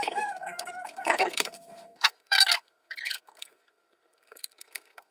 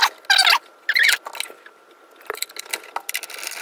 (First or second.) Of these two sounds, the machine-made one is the first